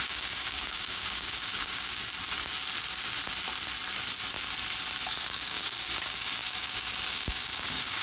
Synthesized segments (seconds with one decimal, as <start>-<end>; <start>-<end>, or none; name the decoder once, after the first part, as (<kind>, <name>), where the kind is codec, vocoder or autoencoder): 0.0-2.0 (codec, DAC); 5.2-8.0